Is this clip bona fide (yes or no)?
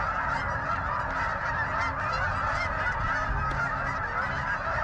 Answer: yes